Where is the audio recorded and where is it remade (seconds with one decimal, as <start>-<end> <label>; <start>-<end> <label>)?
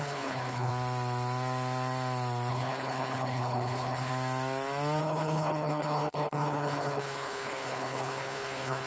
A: 0.0-0.7 remade; 0.7-2.5 recorded; 2.5-4.1 remade; 4.1-5.0 recorded; 5.0-8.9 remade